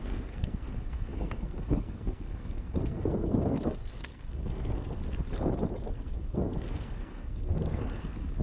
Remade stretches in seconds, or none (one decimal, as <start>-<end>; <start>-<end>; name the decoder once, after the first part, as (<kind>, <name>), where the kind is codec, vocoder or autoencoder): 0.0-5.0 (codec, SNAC); 5.9-8.4